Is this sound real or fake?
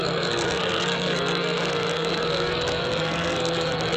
fake